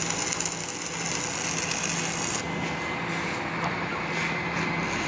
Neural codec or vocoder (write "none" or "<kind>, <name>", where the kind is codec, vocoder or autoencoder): none